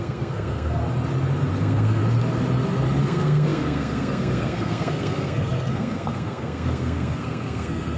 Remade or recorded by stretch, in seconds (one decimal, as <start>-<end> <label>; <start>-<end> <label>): 0.0-0.8 remade; 0.8-1.6 recorded; 1.6-2.0 remade; 2.0-3.0 recorded; 3.0-8.0 remade